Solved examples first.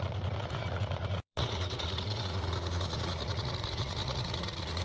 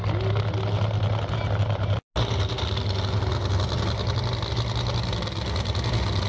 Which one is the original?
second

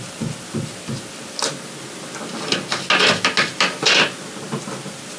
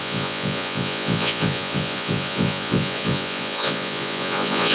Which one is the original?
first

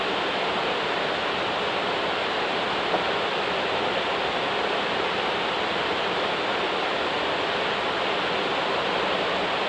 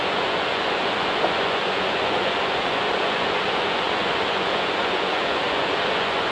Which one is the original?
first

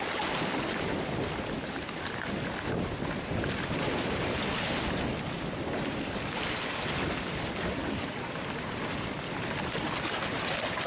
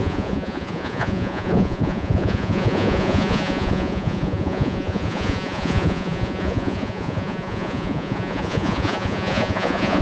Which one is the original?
first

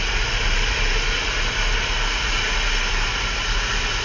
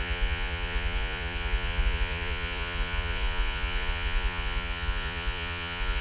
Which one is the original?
first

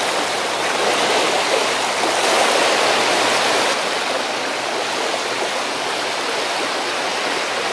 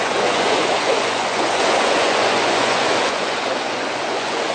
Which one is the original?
first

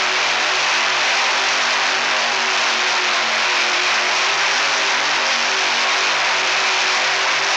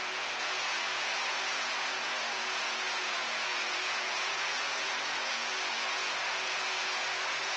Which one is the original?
first